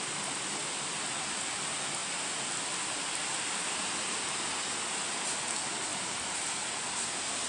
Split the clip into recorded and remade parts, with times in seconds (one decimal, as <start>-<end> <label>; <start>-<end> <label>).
0.0-7.5 recorded